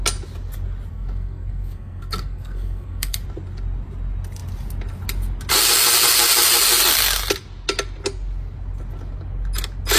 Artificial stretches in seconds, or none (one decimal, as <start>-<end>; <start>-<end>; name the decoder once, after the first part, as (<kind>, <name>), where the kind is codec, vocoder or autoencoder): 0.9-3.2 (codec, SNAC)